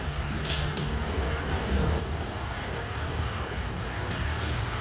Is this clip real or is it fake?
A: fake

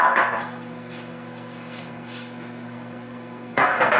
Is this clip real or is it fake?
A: fake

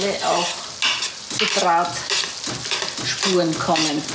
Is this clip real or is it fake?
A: real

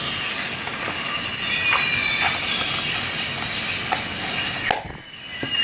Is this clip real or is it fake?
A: real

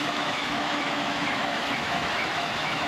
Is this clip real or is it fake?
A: fake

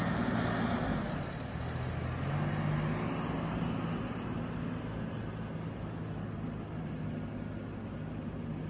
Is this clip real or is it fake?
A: real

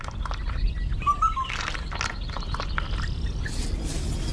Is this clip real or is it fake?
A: real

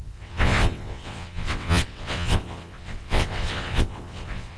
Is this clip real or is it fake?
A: fake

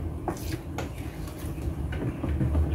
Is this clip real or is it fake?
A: real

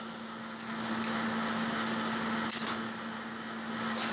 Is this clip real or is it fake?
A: real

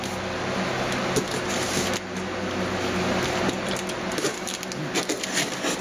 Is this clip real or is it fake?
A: real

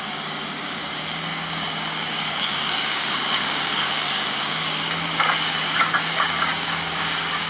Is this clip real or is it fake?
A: fake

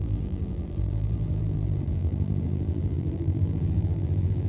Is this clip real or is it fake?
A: fake